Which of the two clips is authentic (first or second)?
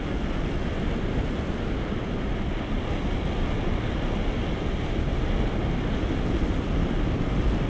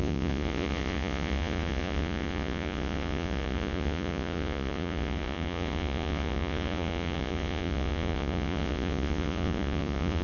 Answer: first